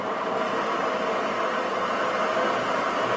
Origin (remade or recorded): recorded